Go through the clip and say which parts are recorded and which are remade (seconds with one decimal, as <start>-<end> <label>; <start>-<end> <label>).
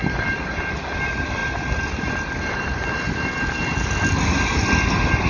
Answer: 0.0-0.5 remade; 0.5-1.4 recorded; 1.4-4.1 remade; 4.1-5.3 recorded